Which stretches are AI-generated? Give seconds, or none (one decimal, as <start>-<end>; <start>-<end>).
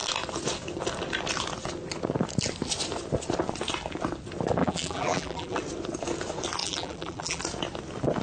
4.6-5.6; 6.6-7.4